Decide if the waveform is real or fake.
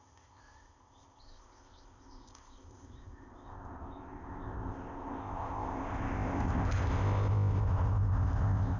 fake